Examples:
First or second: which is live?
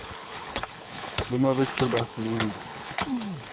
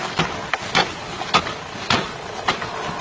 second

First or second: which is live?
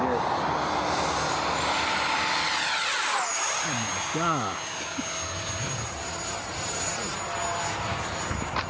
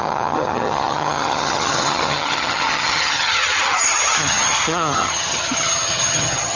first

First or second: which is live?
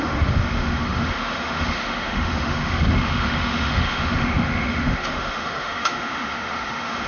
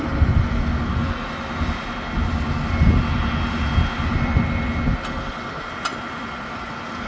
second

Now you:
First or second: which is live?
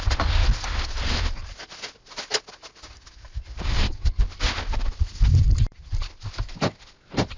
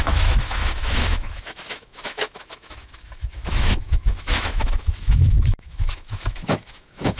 first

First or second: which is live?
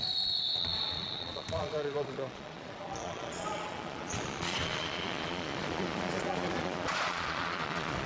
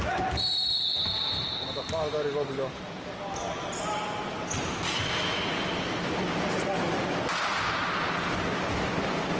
second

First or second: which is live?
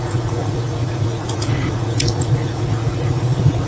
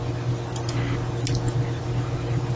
second